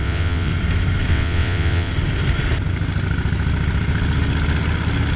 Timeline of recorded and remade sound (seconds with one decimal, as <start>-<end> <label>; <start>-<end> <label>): 0.0-0.5 remade; 0.5-1.1 recorded; 1.1-1.9 remade; 1.9-5.2 recorded